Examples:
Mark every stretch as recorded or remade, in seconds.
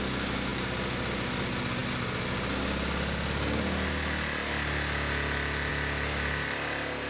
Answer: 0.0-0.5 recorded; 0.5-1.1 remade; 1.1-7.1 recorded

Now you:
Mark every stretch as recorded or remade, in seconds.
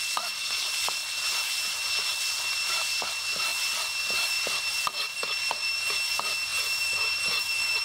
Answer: 0.0-7.8 recorded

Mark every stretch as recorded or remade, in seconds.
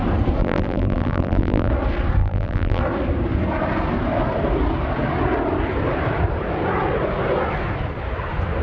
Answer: 0.0-0.4 recorded; 0.4-1.7 remade; 1.7-2.2 recorded; 2.2-2.8 remade; 2.8-8.6 recorded